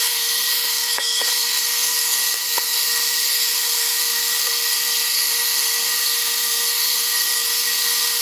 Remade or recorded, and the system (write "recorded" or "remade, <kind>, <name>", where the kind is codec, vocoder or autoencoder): remade, codec, SNAC